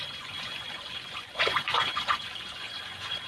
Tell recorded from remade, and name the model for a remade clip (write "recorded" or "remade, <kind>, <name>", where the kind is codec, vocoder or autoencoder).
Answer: remade, vocoder, Vocos